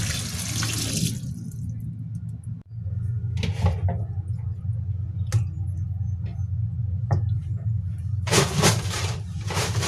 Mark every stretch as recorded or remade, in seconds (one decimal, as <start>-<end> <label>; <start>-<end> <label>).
0.0-6.8 recorded; 6.8-9.9 remade